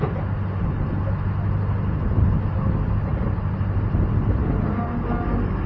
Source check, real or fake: real